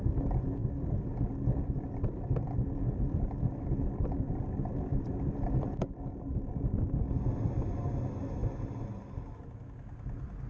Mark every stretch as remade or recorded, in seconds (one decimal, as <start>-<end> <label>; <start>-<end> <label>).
0.0-10.5 recorded